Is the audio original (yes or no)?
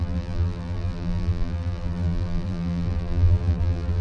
no